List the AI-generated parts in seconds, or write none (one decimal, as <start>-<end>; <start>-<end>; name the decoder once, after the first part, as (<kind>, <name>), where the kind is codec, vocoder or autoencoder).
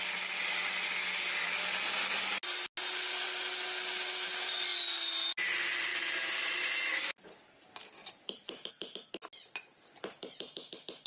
5.9-6.5 (vocoder, BigVGAN v2)